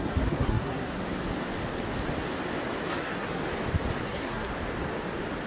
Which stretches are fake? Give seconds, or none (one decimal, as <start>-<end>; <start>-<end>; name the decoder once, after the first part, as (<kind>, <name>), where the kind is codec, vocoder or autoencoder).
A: 0.0-1.0 (codec, SNAC); 2.9-3.4; 4.0-4.5